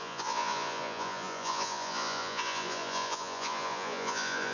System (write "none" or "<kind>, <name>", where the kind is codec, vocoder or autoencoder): vocoder, Vocos